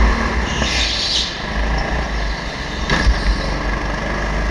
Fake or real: real